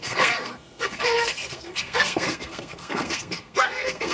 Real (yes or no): no